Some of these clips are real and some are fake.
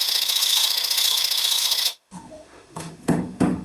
fake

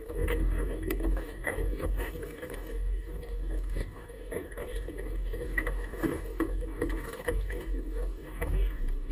fake